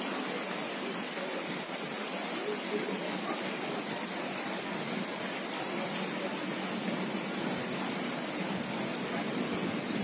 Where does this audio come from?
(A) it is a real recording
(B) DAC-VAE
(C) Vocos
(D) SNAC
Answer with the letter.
A